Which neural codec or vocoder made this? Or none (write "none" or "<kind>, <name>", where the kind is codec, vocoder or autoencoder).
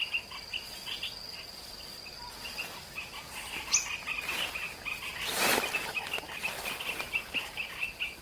none